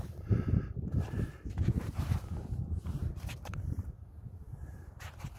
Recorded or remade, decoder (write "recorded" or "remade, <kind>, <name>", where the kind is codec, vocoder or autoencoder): remade, vocoder, BigVGAN v2